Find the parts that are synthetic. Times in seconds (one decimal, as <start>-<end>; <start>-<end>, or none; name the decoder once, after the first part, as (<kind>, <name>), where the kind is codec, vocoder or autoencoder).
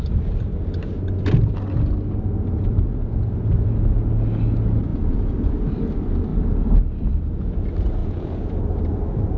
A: 4.9-5.7 (vocoder, Vocos); 8.0-8.7